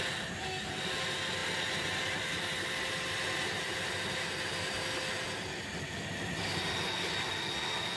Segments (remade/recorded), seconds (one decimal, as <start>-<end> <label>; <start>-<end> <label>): 0.0-8.0 recorded